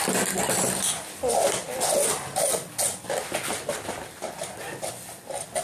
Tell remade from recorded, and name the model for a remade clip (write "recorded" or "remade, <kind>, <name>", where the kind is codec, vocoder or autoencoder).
recorded